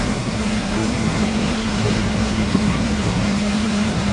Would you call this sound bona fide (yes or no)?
no